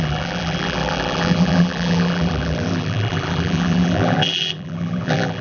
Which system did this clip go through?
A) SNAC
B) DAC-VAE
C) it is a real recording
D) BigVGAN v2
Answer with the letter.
D